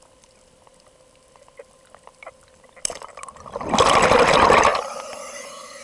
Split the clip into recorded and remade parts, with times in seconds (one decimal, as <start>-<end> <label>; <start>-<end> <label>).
0.0-5.8 recorded